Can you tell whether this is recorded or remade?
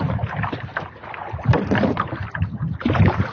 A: recorded